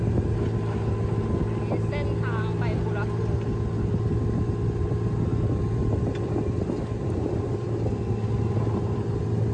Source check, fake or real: real